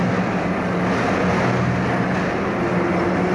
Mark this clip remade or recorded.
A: recorded